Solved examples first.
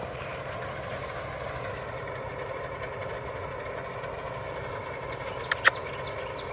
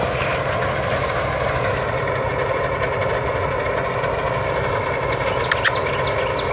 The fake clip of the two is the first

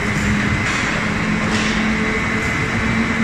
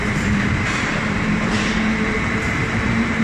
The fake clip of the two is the second